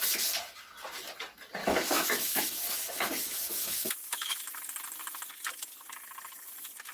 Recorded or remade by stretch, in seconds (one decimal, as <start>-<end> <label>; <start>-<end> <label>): 0.0-1.6 recorded; 1.6-2.4 remade; 2.4-3.2 recorded; 3.2-4.4 remade; 4.4-6.9 recorded